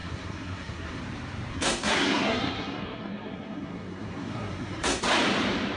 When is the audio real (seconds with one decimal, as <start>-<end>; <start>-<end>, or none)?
1.0-1.5; 5.0-5.8